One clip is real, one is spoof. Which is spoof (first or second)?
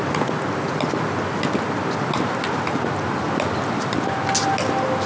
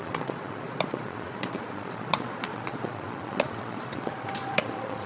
second